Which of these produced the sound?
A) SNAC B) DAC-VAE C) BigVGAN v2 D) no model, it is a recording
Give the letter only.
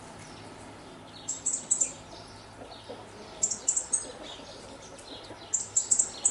D